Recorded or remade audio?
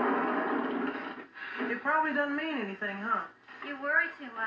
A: recorded